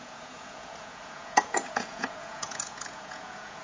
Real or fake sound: fake